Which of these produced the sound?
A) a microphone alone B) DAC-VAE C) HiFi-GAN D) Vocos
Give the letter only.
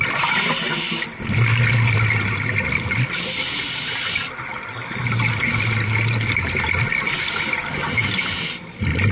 A